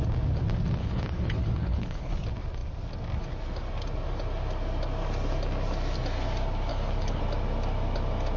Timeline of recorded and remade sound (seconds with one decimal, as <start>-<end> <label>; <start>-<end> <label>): 0.0-0.8 recorded; 0.8-2.1 remade; 2.1-6.7 recorded; 6.7-7.2 remade; 7.2-8.4 recorded